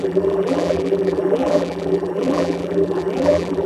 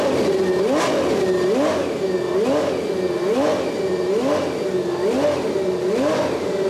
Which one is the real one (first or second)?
second